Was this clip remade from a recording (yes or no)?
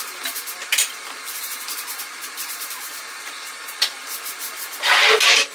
yes